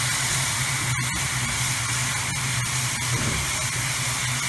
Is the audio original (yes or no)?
yes